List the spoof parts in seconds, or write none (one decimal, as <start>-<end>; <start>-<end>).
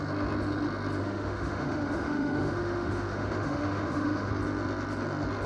1.0-4.3